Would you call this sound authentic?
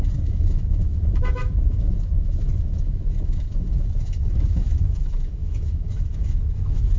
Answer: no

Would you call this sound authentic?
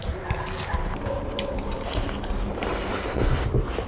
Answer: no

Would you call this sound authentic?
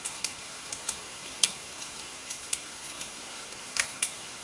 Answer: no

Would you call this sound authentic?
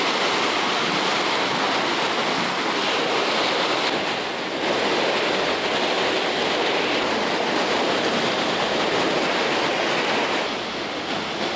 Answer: yes